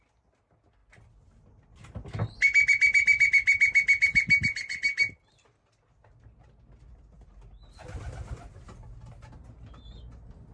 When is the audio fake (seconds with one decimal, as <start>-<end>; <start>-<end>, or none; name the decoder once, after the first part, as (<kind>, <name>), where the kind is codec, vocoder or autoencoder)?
none